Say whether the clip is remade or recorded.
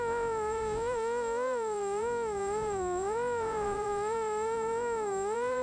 remade